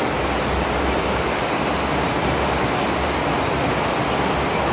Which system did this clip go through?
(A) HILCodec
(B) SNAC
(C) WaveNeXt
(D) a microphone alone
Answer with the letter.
D